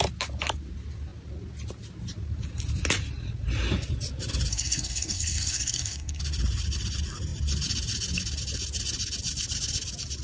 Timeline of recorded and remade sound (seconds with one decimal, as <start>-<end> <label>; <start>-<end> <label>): 0.0-4.5 recorded; 4.5-6.2 remade; 6.2-10.2 recorded